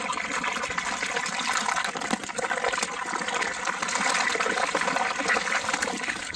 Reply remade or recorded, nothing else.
recorded